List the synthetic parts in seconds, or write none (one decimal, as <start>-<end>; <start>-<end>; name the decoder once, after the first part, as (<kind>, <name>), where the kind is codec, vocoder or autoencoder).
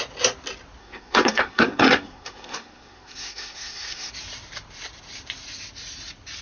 0.8-4.1 (codec, SNAC)